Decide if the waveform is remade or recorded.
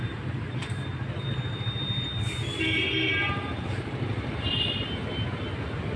recorded